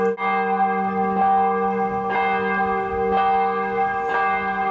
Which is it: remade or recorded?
recorded